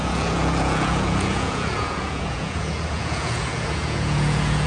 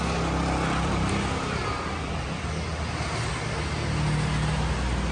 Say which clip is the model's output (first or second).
first